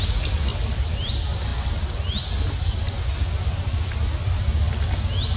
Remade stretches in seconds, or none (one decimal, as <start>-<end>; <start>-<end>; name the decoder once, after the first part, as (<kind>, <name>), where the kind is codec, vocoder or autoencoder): 0.5-1.1 (vocoder, BigVGAN v2)